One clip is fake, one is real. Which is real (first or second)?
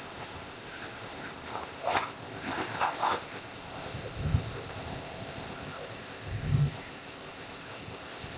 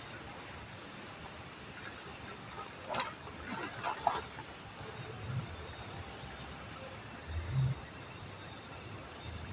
second